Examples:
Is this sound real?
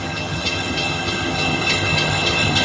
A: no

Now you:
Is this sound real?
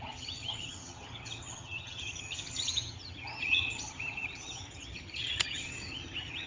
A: no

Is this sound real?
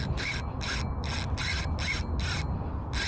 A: yes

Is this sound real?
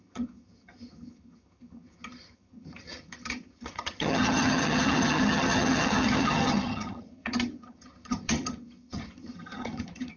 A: no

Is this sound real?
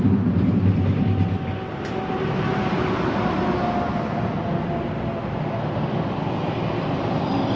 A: yes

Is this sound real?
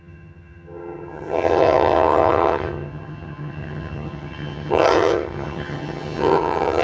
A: no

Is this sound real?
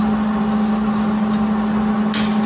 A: yes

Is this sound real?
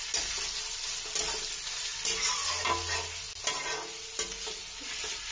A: yes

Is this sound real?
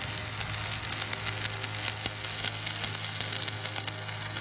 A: yes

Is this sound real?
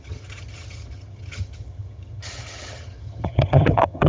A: no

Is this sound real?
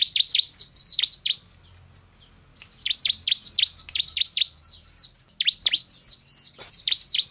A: yes